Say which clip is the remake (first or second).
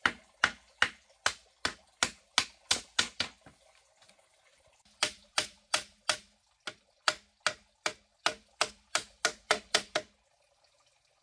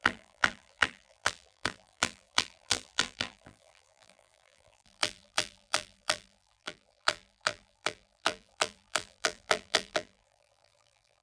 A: second